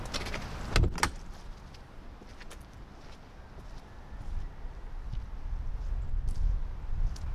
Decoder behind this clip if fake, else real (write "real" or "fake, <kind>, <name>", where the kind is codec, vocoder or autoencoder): real